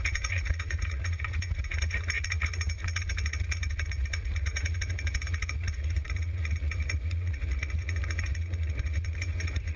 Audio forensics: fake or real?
fake